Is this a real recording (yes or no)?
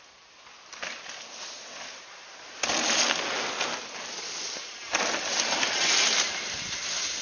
yes